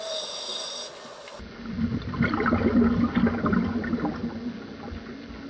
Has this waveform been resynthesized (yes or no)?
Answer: no